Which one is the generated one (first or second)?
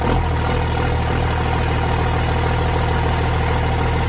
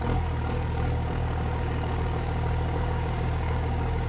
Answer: second